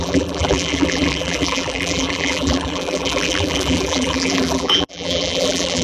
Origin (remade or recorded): remade